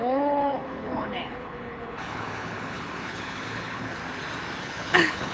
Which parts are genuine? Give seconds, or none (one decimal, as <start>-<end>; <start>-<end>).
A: 4.0-4.6